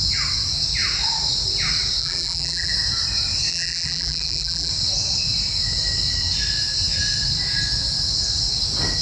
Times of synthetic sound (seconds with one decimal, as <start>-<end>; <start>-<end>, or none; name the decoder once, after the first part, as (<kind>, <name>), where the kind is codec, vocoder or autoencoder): 2.0-2.7 (vocoder, BigVGAN v2); 3.5-4.7